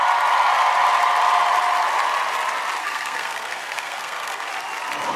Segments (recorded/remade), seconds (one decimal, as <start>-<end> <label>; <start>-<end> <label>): 0.0-2.8 recorded; 2.8-4.5 remade; 4.5-5.2 recorded